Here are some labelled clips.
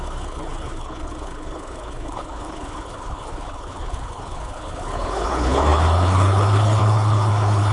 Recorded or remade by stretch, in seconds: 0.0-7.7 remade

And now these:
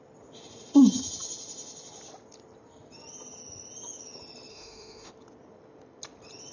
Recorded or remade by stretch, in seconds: 0.0-4.5 recorded; 4.5-5.1 remade; 5.1-6.5 recorded